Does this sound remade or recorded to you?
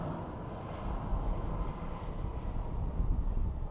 recorded